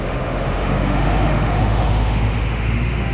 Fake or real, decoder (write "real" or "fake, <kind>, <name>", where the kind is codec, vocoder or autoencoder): fake, autoencoder, DAC-VAE